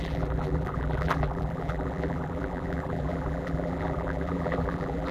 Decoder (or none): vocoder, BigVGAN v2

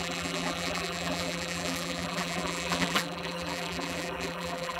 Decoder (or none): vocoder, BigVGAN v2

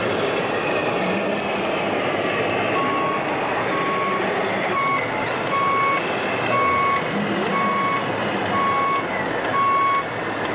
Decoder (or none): none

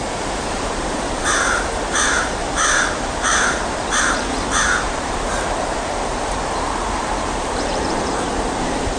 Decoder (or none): vocoder, BigVGAN v2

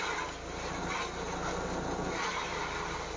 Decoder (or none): none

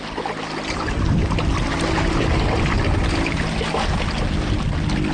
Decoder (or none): none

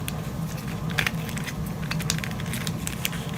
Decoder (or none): none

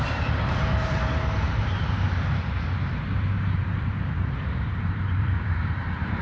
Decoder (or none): vocoder, BigVGAN v2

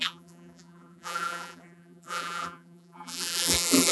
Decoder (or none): vocoder, BigVGAN v2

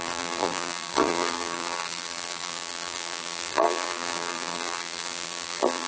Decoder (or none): vocoder, BigVGAN v2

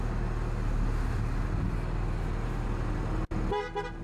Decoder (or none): none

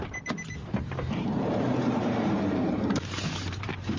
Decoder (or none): vocoder, BigVGAN v2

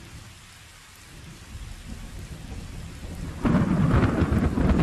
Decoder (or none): none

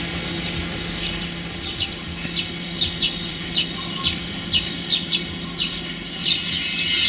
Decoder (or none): vocoder, BigVGAN v2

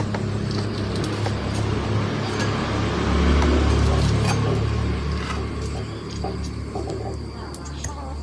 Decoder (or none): none